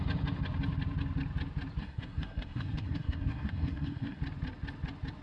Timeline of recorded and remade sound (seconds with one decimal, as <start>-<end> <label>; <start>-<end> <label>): 0.0-1.8 recorded; 1.8-4.2 remade; 4.2-5.2 recorded